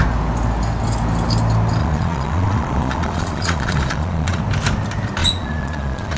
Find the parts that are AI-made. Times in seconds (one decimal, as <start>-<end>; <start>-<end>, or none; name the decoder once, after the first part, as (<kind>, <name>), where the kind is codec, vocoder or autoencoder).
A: 1.8-4.4 (vocoder, Vocos); 5.2-6.2